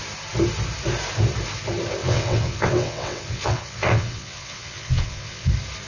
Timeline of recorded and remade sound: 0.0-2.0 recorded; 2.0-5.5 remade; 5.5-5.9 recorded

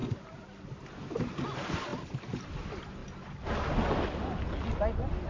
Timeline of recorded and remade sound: 0.0-5.3 recorded

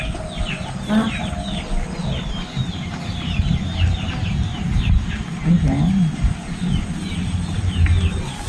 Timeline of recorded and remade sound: 0.0-2.6 recorded; 2.6-3.6 remade; 3.6-4.5 recorded; 4.5-5.9 remade; 5.9-8.5 recorded

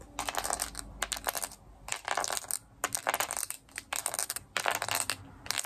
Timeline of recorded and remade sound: 0.0-5.7 recorded

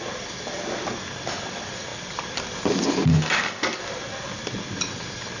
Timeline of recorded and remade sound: 0.0-3.1 recorded; 3.1-3.8 remade; 3.8-5.4 recorded

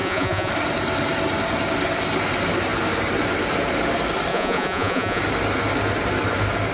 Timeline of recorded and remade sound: 0.0-0.5 remade; 0.5-4.3 recorded; 4.3-5.2 remade; 5.2-6.7 recorded

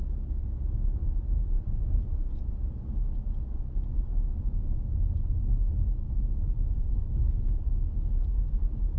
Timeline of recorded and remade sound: 0.0-1.0 recorded; 1.0-2.5 remade; 2.5-9.0 recorded